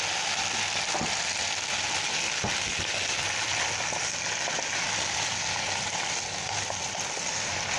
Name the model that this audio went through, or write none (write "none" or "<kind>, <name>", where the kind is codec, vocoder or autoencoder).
none